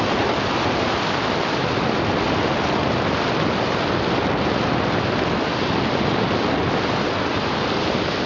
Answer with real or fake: real